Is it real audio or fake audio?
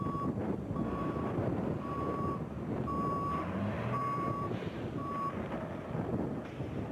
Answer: real